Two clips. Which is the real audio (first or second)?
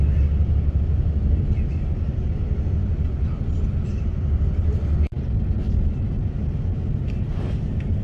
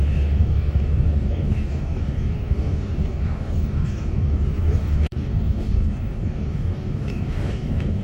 first